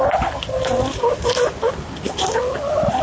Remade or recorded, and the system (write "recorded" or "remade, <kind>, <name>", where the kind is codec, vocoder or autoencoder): recorded